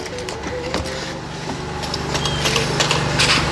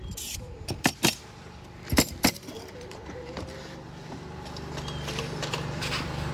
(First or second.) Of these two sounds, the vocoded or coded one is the second